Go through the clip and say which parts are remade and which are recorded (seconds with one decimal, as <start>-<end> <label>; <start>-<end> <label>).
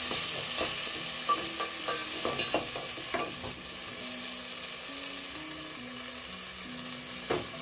0.0-7.6 recorded